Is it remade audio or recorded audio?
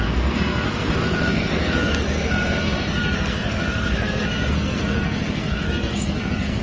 remade